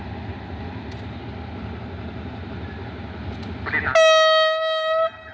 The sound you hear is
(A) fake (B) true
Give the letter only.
B